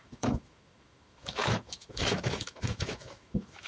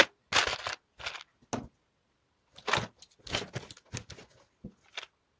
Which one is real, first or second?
second